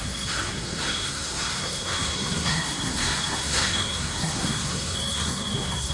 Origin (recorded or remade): remade